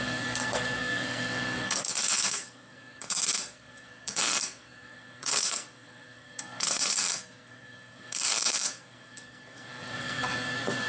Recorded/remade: remade